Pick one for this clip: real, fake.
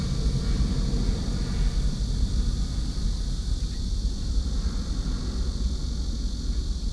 real